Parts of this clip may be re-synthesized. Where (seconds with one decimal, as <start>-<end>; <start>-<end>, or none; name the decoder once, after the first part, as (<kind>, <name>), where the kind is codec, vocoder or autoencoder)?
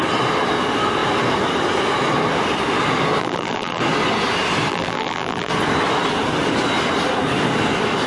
3.2-3.8 (vocoder, BigVGAN v2); 4.7-5.5